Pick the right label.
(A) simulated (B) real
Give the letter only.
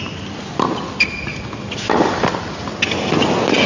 B